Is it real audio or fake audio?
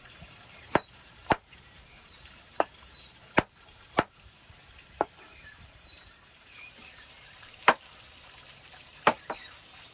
fake